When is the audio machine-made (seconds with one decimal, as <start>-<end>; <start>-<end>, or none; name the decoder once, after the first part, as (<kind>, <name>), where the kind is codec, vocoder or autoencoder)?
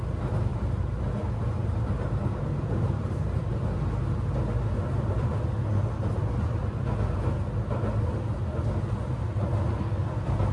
0.5-1.0 (vocoder, BigVGAN v2); 1.6-3.4